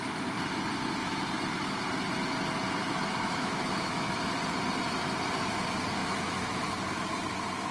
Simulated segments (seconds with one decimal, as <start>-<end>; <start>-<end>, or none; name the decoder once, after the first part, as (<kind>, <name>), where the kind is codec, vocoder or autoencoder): 2.8-4.3 (autoencoder, DAC-VAE); 6.0-6.7